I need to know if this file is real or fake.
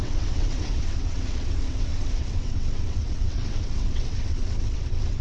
fake